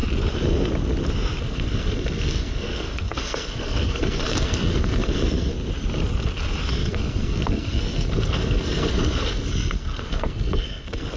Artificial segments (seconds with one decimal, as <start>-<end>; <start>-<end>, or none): 1.4-5.5; 6.7-11.2

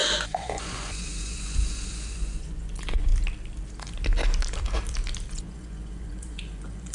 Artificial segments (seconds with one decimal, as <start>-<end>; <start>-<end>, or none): 0.0-3.1; 5.3-6.9

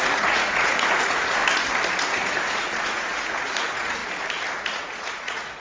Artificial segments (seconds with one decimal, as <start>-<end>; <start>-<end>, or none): 0.0-1.4; 2.1-4.0; 4.7-5.6